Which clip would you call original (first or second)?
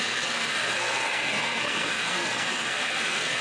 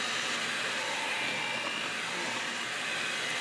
second